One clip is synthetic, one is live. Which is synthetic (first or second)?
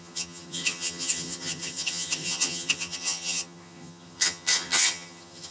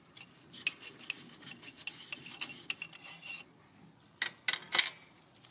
first